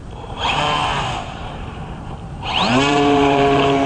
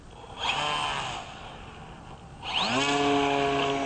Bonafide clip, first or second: second